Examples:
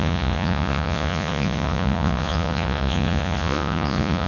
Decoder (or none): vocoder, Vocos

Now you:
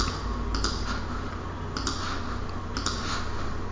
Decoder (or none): none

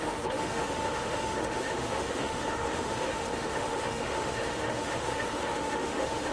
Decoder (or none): autoencoder, DAC-VAE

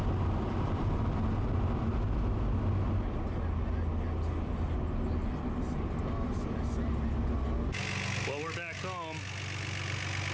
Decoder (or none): none